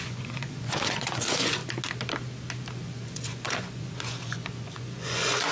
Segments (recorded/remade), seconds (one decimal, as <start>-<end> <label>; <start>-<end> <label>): 0.0-1.6 remade; 1.6-2.7 recorded; 2.7-5.5 remade